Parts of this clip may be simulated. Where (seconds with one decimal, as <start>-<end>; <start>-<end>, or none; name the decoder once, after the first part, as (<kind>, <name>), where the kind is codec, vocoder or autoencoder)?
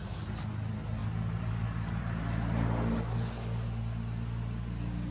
none